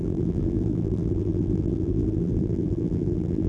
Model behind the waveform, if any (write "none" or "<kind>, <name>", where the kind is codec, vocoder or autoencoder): vocoder, BigVGAN v2